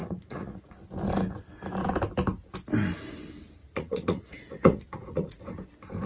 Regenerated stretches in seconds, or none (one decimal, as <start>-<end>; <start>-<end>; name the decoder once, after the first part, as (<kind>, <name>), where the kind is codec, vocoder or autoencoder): 0.0-0.8 (vocoder, Vocos); 3.6-5.4